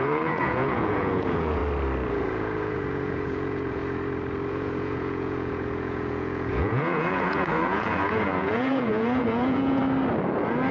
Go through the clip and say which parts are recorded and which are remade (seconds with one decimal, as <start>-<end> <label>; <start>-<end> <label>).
0.0-1.6 remade; 1.6-2.1 recorded; 2.1-3.8 remade; 3.8-4.5 recorded; 4.5-9.8 remade; 9.8-10.7 recorded